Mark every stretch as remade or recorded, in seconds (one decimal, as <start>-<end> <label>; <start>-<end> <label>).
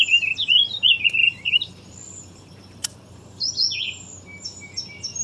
0.0-1.2 recorded; 1.2-3.5 remade; 3.5-5.2 recorded